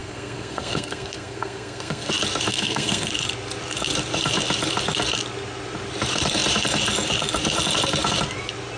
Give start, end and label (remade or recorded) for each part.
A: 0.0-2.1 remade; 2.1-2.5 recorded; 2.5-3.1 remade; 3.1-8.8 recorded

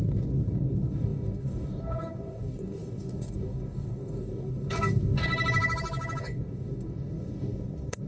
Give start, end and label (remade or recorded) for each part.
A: 0.0-5.3 remade; 5.3-6.2 recorded; 6.2-8.1 remade

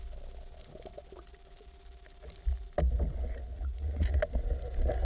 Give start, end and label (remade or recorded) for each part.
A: 0.0-3.5 recorded; 3.5-4.2 remade; 4.2-5.0 recorded

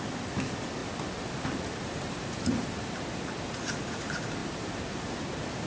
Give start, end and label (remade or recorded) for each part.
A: 0.0-0.8 recorded; 0.8-3.2 remade; 3.2-4.4 recorded; 4.4-5.7 remade

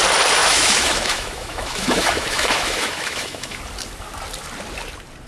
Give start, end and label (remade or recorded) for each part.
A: 0.0-0.4 recorded; 0.4-3.6 remade; 3.6-5.3 recorded

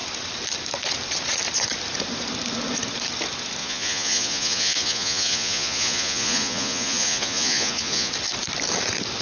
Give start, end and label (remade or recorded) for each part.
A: 0.0-3.6 recorded; 3.6-8.1 remade; 8.1-9.2 recorded